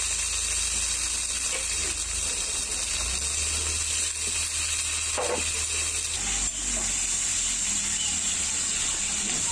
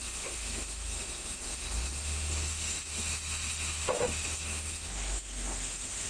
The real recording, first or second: first